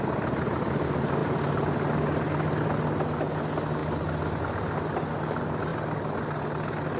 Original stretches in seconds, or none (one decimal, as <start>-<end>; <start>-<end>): 0.0-7.0